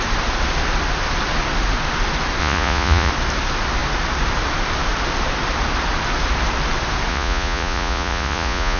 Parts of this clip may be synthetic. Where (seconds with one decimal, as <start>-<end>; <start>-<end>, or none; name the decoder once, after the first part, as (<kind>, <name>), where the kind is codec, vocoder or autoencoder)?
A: 2.4-3.1 (vocoder, Vocos); 7.1-8.8

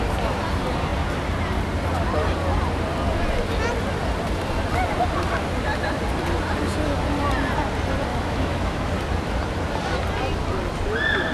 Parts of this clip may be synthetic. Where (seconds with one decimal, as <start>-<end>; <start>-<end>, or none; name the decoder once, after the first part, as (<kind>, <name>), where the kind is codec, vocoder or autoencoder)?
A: 8.1-8.9 (autoencoder, DAC-VAE)